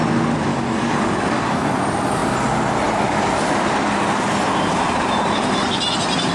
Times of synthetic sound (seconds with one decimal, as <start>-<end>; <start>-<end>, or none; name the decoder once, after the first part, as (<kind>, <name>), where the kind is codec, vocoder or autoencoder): 0.5-1.7 (codec, DAC)